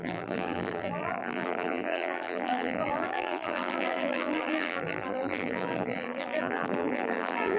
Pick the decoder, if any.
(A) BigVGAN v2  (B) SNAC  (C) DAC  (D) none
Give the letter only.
A